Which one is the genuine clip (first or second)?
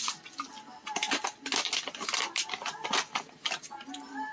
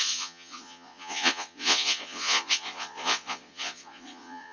first